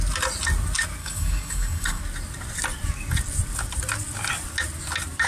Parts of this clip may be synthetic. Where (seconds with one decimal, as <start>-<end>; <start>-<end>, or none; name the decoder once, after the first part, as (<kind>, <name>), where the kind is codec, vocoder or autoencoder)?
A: 1.0-2.0 (codec, DAC)